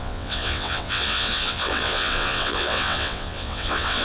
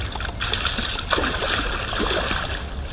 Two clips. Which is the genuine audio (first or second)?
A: second